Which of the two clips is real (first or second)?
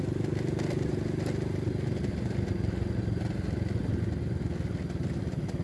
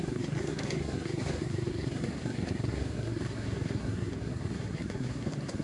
first